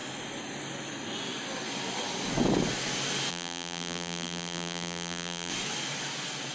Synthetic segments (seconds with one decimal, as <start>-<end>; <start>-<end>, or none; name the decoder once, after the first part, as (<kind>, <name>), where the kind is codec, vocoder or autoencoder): 3.3-5.5 (vocoder, BigVGAN v2)